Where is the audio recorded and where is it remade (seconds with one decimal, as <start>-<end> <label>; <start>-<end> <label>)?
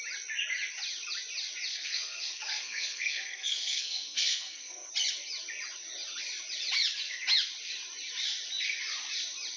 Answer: 0.0-1.7 recorded; 1.7-4.9 remade; 4.9-9.6 recorded